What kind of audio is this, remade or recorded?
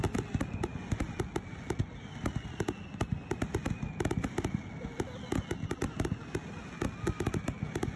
recorded